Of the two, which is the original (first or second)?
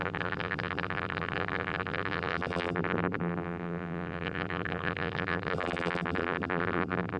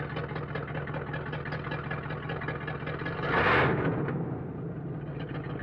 second